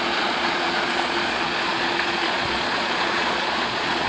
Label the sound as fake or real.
fake